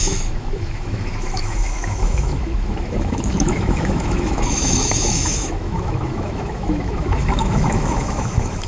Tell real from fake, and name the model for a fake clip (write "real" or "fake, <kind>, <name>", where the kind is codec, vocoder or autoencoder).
fake, autoencoder, DAC-VAE